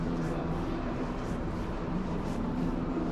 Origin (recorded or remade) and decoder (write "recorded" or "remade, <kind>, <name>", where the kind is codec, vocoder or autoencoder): remade, vocoder, BigVGAN v2